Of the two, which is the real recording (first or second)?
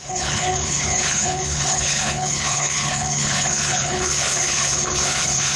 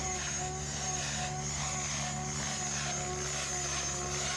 second